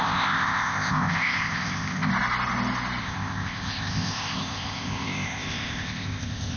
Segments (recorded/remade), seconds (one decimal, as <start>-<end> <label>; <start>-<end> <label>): 0.0-2.1 remade; 2.1-3.0 recorded; 3.0-6.6 remade